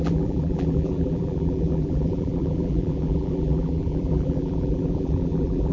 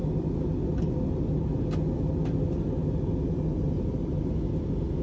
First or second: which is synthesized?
first